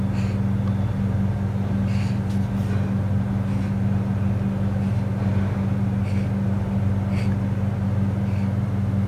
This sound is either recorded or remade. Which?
recorded